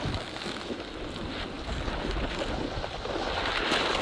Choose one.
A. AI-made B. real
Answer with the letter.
B